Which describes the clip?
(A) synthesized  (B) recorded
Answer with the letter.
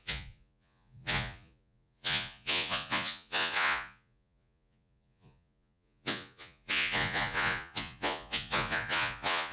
A